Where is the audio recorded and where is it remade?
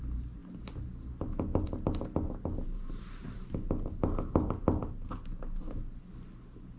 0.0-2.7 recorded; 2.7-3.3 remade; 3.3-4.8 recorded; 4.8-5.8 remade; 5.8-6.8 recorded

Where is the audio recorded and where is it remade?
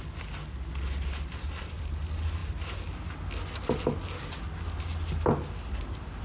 0.0-6.2 recorded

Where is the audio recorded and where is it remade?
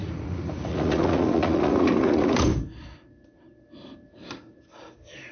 0.0-2.5 remade; 2.5-5.3 recorded